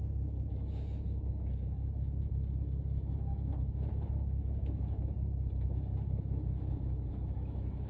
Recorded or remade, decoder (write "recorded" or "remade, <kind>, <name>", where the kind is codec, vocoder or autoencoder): remade, autoencoder, DAC-VAE